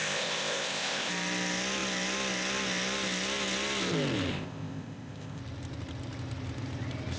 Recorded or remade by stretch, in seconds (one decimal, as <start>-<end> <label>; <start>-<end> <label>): 0.0-1.1 remade; 1.1-4.3 recorded; 4.3-5.4 remade; 5.4-7.2 recorded